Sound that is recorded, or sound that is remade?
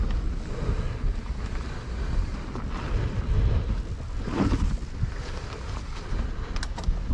recorded